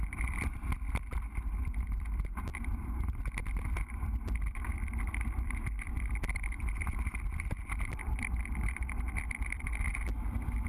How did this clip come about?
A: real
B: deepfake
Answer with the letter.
B